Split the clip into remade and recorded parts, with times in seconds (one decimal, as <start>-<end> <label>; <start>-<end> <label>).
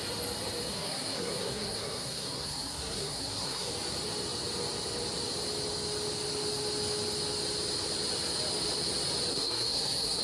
0.0-0.7 recorded; 0.7-3.7 remade; 3.7-9.3 recorded; 9.3-10.2 remade